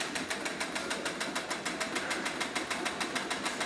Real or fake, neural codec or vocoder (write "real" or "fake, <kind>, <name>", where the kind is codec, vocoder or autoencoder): real